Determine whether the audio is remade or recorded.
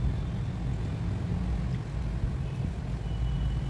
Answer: recorded